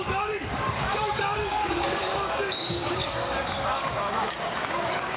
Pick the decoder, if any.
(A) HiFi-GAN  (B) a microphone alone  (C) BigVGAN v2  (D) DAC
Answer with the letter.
D